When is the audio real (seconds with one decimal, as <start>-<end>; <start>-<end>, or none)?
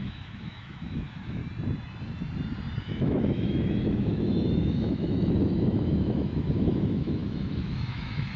1.4-2.8